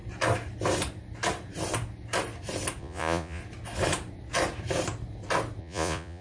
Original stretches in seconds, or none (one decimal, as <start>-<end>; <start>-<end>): 0.0-2.8; 3.4-5.6